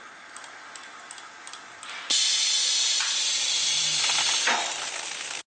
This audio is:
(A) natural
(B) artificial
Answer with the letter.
A